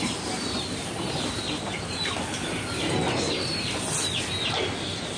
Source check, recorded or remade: recorded